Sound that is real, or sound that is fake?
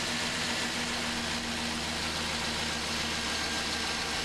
real